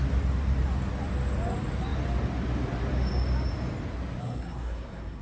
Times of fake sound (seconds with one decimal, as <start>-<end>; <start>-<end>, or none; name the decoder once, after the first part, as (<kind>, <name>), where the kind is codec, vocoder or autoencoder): 4.2-5.2 (codec, SNAC)